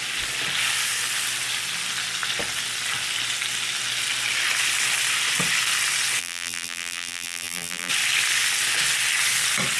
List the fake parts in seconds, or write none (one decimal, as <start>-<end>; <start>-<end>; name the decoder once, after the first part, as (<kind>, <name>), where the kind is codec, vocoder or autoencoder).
6.2-7.9 (vocoder, BigVGAN v2)